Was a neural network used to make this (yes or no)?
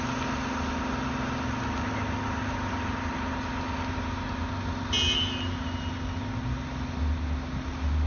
no